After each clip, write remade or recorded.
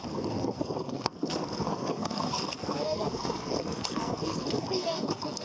remade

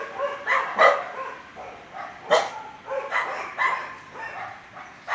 recorded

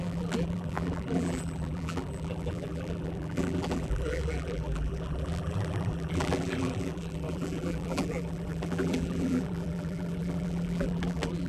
remade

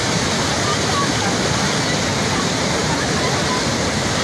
recorded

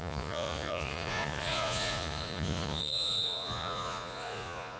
remade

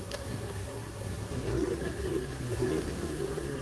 remade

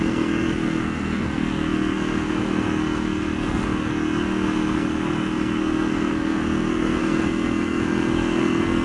remade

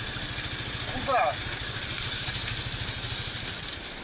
recorded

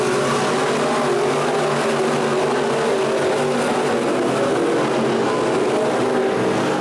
recorded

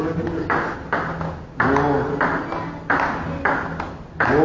recorded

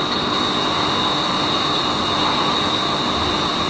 recorded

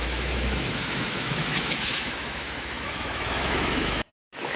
remade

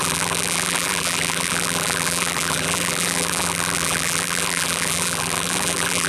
remade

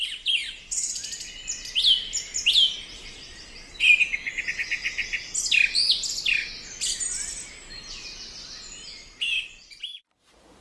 recorded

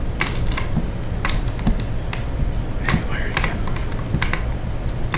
recorded